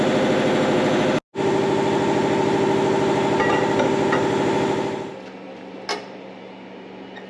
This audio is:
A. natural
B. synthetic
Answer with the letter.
A